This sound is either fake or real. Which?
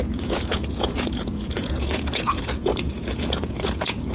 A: fake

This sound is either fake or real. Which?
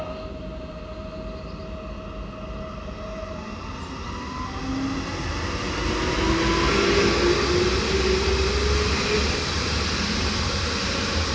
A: real